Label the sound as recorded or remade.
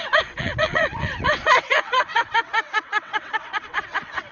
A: remade